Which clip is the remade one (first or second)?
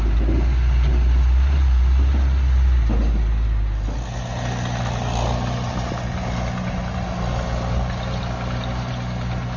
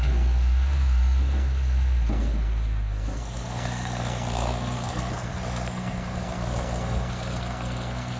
second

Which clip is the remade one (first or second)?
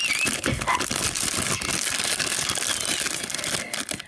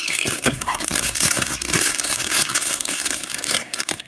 second